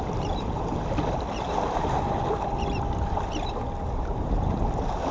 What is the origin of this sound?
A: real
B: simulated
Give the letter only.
A